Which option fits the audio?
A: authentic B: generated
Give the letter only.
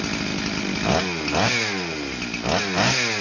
A